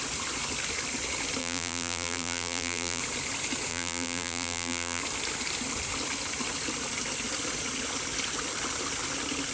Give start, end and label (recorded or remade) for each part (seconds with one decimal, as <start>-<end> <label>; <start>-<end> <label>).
0.0-1.4 recorded; 1.4-3.0 remade; 3.0-3.7 recorded; 3.7-5.0 remade; 5.0-9.5 recorded